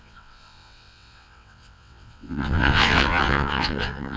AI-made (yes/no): yes